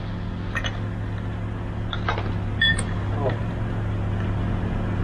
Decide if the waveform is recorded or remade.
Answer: recorded